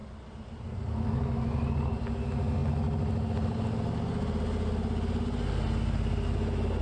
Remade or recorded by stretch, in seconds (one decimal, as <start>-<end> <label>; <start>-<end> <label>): 0.0-6.8 recorded